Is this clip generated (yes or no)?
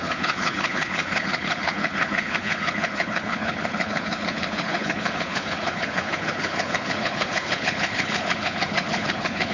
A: yes